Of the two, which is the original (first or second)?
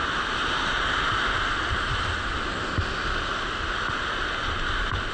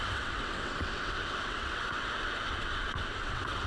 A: first